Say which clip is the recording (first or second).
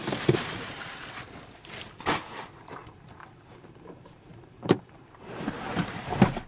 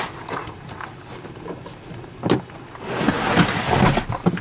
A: second